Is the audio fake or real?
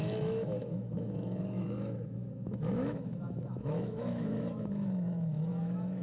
fake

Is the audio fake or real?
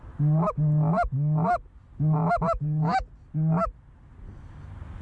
real